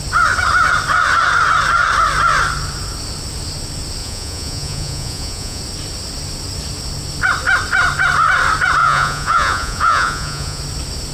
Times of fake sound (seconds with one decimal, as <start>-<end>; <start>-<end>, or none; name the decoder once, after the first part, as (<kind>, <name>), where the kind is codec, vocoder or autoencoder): 4.0-5.6 (vocoder, Vocos); 8.8-10.6